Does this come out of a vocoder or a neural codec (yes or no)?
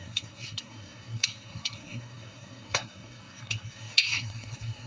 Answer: yes